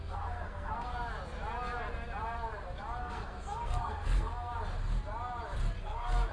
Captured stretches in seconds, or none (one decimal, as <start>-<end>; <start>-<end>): 0.9-3.0; 4.5-5.8